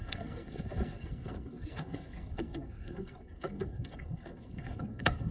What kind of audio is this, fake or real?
fake